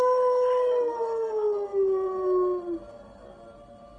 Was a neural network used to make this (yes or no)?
no